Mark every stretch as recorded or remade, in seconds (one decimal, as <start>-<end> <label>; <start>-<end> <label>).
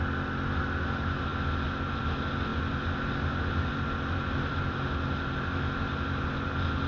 0.0-6.9 recorded